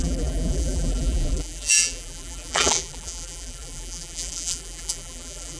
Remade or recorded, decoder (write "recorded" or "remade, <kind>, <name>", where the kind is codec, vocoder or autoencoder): remade, vocoder, BigVGAN v2